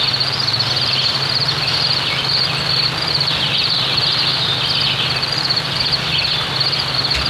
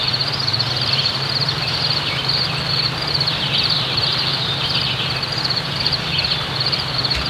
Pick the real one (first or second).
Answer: first